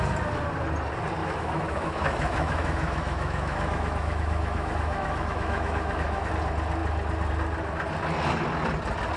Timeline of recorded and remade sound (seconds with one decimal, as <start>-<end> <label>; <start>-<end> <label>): 0.0-1.2 recorded; 1.2-6.3 remade; 6.3-9.2 recorded